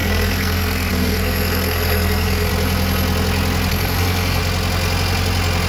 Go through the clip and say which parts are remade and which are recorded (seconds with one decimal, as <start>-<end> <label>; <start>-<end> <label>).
0.0-2.5 remade; 2.5-3.7 recorded; 3.7-4.4 remade; 4.4-5.7 recorded